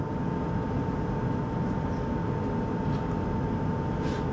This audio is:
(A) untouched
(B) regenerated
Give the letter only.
A